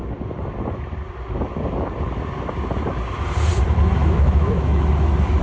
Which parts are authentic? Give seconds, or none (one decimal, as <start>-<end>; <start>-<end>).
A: 0.0-4.0; 4.8-5.4